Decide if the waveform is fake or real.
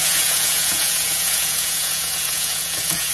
fake